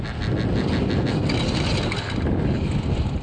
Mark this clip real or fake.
real